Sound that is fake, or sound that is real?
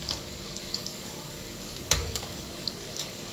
fake